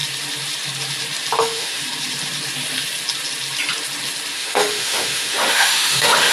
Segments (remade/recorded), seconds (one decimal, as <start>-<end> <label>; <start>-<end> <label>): 0.0-1.4 recorded; 1.4-1.8 remade; 1.8-4.3 recorded; 4.3-6.3 remade